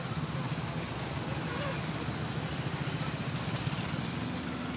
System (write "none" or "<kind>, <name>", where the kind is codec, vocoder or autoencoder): none